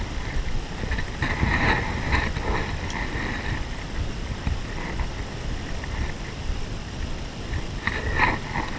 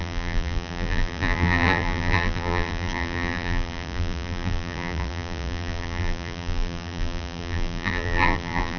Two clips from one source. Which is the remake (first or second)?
second